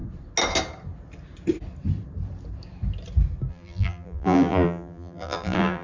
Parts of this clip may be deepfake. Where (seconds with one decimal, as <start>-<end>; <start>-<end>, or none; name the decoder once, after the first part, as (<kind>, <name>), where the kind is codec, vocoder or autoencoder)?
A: 3.5-5.8 (vocoder, BigVGAN v2)